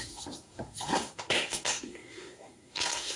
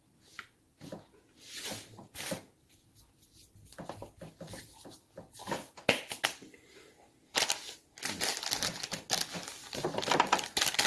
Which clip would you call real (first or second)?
second